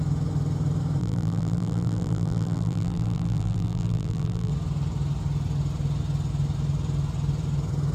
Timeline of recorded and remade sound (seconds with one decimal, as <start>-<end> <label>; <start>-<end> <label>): 0.0-1.0 recorded; 1.0-4.5 remade; 4.5-7.9 recorded